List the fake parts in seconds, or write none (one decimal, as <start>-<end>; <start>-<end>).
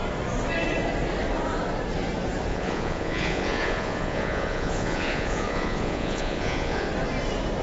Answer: 2.5-6.9